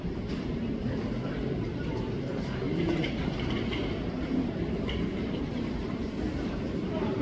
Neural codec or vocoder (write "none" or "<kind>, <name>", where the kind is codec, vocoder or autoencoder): vocoder, BigVGAN v2